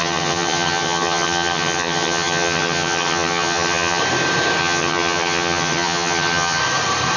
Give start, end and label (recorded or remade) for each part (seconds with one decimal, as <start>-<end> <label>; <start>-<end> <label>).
0.0-4.0 remade; 4.0-4.6 recorded; 4.6-6.6 remade; 6.6-7.2 recorded